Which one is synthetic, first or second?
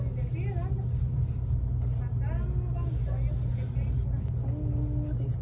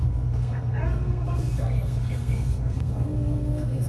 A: second